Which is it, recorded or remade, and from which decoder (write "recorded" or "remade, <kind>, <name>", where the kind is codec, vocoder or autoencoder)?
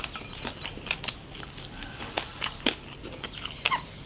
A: recorded